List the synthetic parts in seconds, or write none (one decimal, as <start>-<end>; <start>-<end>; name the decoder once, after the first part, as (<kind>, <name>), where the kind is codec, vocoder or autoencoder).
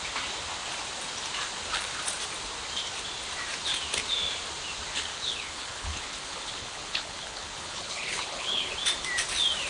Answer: 5.1-8.7 (codec, HILCodec)